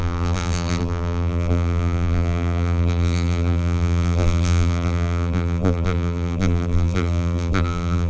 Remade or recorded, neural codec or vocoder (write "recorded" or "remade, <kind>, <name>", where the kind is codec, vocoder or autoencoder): remade, vocoder, BigVGAN v2